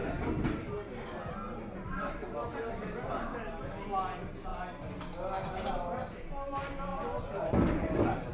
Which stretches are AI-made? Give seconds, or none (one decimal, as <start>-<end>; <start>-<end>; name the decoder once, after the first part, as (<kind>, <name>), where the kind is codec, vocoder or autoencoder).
none